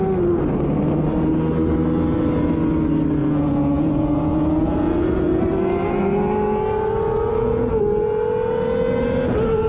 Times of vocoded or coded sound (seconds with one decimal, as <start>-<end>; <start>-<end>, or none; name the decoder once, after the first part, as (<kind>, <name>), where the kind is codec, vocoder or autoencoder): 3.2-5.3 (vocoder, Vocos); 7.3-7.8